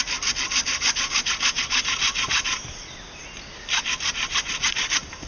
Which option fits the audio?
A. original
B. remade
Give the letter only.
A